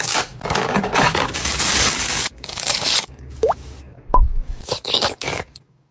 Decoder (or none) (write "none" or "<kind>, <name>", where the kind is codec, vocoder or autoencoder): codec, DAC